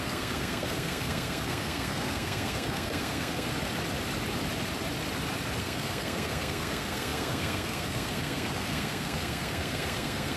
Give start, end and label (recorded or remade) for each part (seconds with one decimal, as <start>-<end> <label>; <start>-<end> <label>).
0.0-3.5 remade; 3.5-5.6 recorded; 5.6-10.4 remade